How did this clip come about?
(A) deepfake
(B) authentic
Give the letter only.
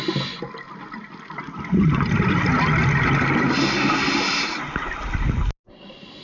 B